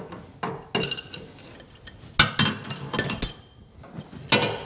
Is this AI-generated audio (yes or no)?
no